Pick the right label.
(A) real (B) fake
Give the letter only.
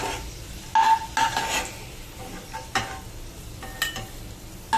A